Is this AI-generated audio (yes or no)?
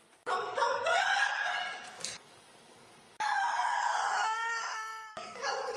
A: yes